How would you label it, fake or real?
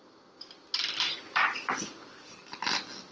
real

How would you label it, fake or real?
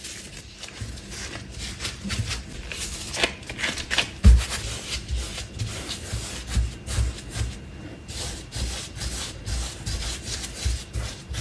real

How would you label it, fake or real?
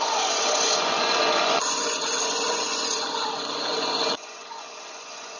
fake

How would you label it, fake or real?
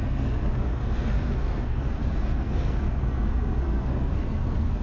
fake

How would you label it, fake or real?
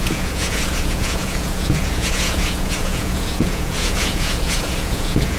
fake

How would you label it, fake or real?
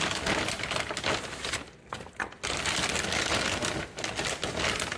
real